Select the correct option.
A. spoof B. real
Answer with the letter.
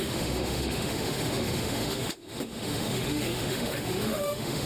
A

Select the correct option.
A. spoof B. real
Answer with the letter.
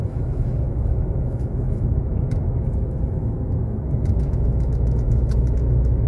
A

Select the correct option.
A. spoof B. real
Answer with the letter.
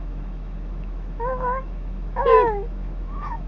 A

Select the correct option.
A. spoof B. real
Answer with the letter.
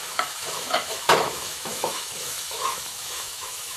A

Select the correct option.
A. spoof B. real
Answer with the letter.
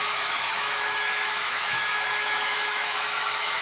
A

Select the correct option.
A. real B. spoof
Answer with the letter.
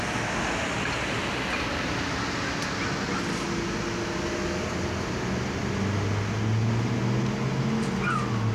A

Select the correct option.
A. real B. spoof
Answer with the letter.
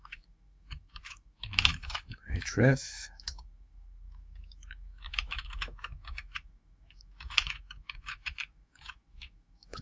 B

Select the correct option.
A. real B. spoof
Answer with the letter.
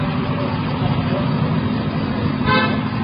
A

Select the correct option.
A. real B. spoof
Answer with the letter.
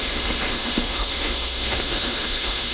B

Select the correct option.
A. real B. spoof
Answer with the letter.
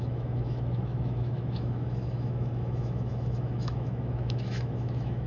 B